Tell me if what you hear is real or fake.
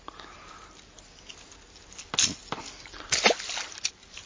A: real